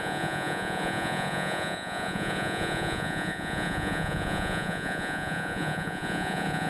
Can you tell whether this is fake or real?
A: fake